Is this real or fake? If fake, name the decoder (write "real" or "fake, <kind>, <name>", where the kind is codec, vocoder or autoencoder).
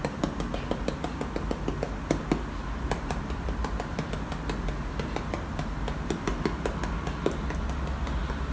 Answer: real